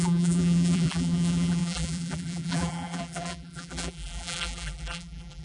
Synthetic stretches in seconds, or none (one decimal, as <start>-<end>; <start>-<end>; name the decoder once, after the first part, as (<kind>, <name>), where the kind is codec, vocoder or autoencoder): 0.0-5.4 (vocoder, BigVGAN v2)